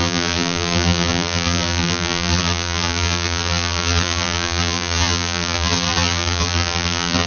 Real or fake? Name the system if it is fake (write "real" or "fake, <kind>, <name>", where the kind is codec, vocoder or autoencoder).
fake, vocoder, BigVGAN v2